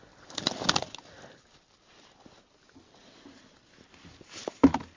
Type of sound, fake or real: real